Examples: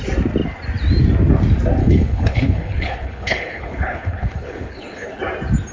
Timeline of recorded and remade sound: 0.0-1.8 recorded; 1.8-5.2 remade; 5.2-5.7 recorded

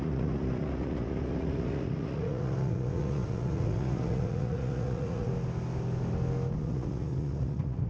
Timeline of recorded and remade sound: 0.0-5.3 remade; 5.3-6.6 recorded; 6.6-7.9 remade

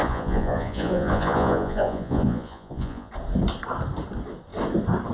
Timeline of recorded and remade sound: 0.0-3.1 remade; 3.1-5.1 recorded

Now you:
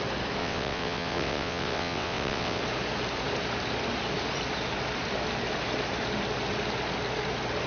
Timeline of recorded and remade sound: 0.0-0.4 recorded; 0.4-2.6 remade; 2.6-7.7 recorded